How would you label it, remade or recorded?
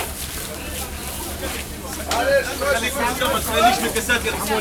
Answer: recorded